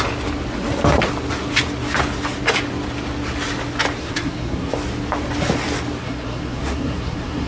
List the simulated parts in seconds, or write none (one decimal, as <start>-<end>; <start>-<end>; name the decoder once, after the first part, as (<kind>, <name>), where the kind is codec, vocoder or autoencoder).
4.0-4.7 (codec, SNAC); 6.0-7.5